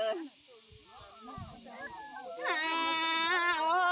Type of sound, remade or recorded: recorded